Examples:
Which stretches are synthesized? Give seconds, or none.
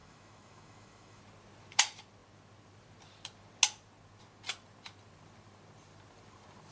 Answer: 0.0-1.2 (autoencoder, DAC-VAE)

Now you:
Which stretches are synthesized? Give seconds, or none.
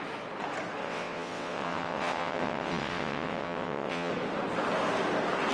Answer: 0.8-4.1 (vocoder, WaveNeXt)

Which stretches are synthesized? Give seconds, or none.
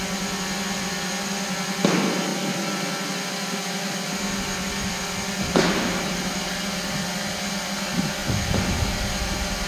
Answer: none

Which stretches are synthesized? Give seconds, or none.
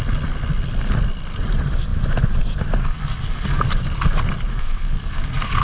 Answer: 2.8-3.6 (codec, SNAC); 4.5-5.6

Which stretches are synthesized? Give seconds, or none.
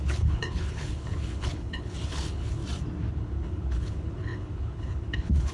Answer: 0.0-2.6 (codec, HILCodec); 3.1-5.5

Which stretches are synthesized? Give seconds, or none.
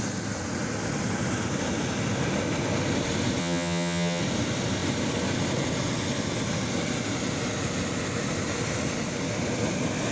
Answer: 3.4-4.2 (vocoder, HiFi-GAN)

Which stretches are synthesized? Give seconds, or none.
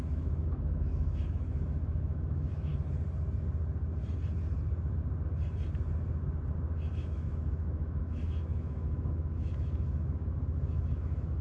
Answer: 0.0-2.7 (autoencoder, DAC-VAE); 6.9-11.4